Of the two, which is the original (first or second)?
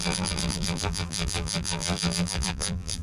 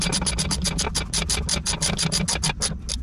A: second